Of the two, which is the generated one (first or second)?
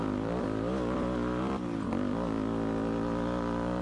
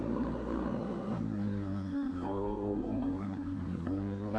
second